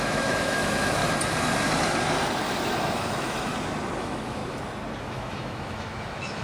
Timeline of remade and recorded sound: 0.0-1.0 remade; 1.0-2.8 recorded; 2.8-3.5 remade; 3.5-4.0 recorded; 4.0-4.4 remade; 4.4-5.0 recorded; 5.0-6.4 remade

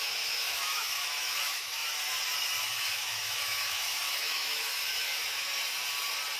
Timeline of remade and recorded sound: 0.0-1.8 remade; 1.8-2.6 recorded; 2.6-5.5 remade; 5.5-6.4 recorded

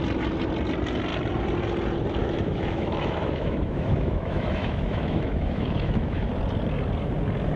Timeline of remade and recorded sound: 0.0-2.2 recorded; 2.2-6.3 remade; 6.3-7.6 recorded